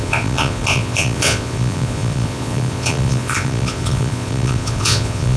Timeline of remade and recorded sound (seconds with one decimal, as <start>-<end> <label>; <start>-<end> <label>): 0.0-5.4 remade